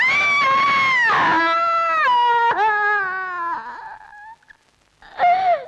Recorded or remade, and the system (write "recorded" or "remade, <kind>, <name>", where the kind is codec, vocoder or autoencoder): recorded